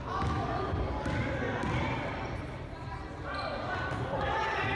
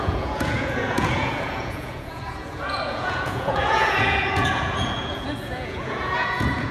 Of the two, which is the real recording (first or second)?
first